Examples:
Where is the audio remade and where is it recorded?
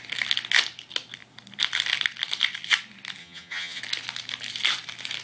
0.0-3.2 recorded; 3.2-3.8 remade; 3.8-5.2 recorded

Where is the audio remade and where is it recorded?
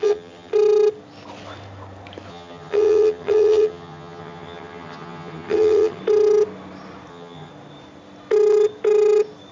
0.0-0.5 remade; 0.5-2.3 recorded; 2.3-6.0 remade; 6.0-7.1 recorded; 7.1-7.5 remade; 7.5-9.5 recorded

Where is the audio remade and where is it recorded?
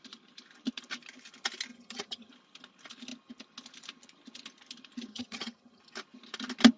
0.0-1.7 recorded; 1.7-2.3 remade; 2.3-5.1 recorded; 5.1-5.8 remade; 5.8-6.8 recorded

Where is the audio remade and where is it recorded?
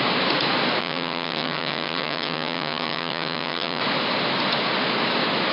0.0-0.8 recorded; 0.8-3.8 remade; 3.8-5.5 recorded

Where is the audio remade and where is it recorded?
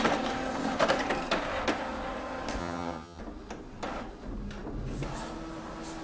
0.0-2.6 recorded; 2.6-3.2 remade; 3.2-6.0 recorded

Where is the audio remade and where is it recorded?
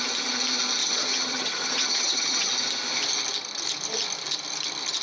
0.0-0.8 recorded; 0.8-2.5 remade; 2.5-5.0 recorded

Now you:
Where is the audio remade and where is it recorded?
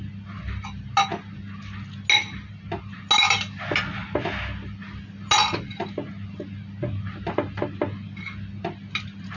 0.0-9.4 recorded